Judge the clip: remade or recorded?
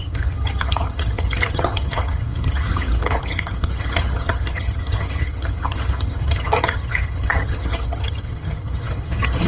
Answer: remade